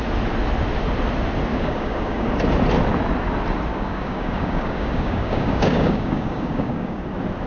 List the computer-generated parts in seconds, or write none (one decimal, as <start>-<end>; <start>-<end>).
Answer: 1.5-2.3; 3.7-7.0